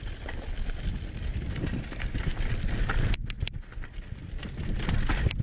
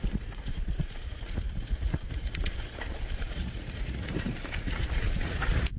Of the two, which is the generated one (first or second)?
second